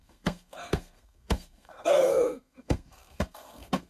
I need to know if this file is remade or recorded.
remade